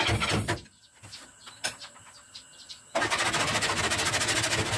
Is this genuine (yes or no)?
yes